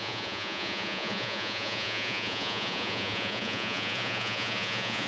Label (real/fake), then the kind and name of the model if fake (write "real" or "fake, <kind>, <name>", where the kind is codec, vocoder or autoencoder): fake, vocoder, Vocos